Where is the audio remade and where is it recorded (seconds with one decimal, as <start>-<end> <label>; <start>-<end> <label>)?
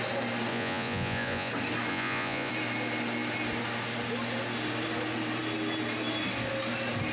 0.0-0.5 recorded; 0.5-1.5 remade; 1.5-1.9 recorded; 1.9-2.5 remade; 2.5-7.1 recorded